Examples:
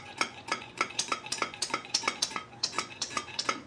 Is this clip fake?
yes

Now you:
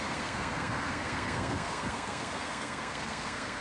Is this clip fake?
yes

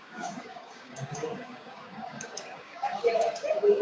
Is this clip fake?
yes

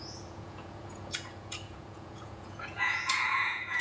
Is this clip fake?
yes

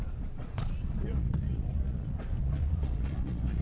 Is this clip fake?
yes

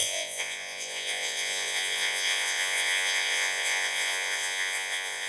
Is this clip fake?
yes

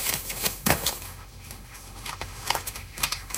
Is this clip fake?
yes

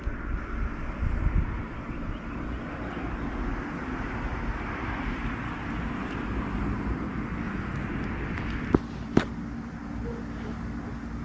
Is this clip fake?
no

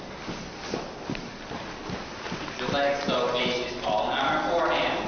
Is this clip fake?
no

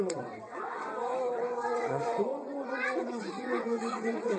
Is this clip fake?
yes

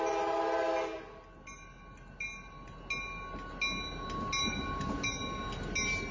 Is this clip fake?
no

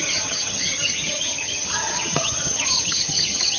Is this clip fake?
yes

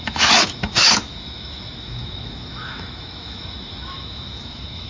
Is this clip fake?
yes